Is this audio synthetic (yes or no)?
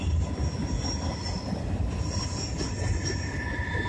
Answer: yes